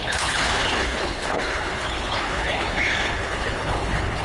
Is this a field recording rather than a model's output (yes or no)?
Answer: no